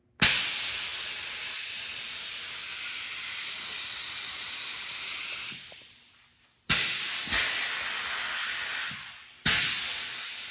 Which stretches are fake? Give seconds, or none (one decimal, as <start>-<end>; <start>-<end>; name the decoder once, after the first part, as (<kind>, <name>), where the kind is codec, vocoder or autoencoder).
none